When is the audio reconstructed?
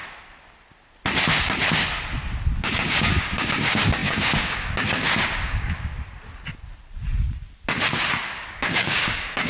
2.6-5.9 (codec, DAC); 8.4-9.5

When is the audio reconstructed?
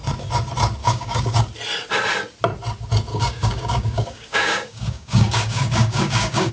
0.8-1.4 (codec, DAC); 3.1-6.5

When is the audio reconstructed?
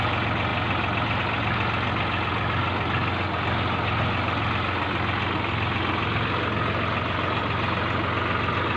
none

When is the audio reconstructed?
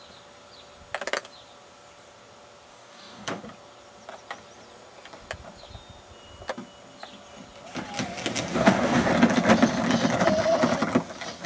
2.7-3.4 (codec, DAC); 8.5-9.1